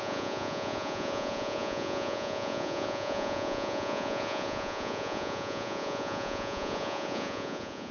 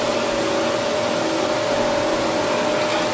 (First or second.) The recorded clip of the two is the second